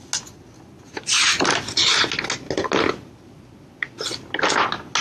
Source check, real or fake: real